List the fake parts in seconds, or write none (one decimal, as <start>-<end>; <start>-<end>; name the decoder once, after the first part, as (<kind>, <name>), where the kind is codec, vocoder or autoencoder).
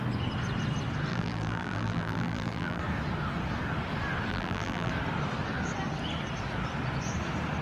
1.1-2.8 (vocoder, BigVGAN v2); 4.3-4.9